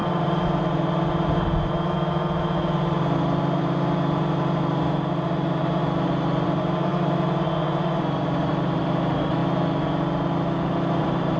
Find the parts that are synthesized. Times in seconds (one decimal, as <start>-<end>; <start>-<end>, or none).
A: 0.0-9.4; 11.0-11.4